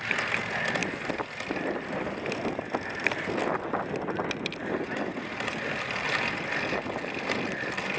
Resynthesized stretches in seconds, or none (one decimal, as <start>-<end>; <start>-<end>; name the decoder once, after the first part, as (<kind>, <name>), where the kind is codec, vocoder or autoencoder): none